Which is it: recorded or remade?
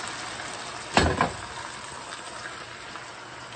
recorded